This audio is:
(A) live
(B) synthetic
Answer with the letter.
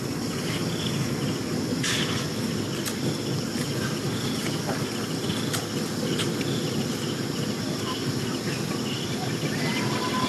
A